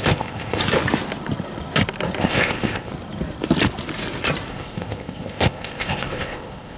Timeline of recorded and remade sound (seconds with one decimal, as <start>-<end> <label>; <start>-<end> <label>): 0.0-0.6 remade; 0.6-2.2 recorded; 2.2-2.9 remade; 2.9-4.5 recorded; 4.5-6.8 remade

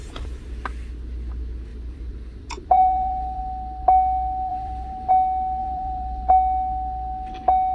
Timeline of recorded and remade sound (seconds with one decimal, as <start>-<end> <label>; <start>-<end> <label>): 0.0-0.5 remade; 0.5-1.7 recorded; 1.7-3.4 remade; 3.4-4.5 recorded; 4.5-5.1 remade; 5.1-5.6 recorded; 5.6-6.3 remade; 6.3-7.7 recorded

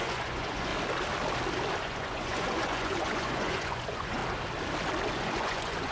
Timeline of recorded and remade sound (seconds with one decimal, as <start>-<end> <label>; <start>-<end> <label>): 0.0-0.7 remade; 0.7-1.8 recorded; 1.8-4.2 remade; 4.2-5.1 recorded; 5.1-5.9 remade

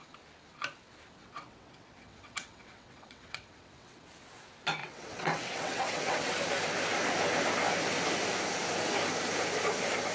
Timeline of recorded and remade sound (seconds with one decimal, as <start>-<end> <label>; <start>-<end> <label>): 0.0-1.2 recorded; 1.2-4.1 remade; 4.1-4.8 recorded; 4.8-6.3 remade; 6.3-10.1 recorded

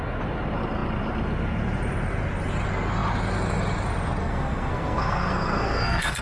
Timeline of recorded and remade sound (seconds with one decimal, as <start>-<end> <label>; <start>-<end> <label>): 0.0-4.2 recorded; 4.2-6.2 remade

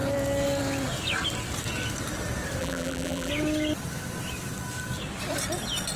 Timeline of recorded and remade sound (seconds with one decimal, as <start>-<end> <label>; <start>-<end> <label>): 0.0-2.6 recorded; 2.6-3.3 remade; 3.3-6.0 recorded